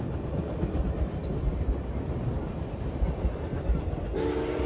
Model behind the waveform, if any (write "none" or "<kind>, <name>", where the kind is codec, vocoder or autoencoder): vocoder, BigVGAN v2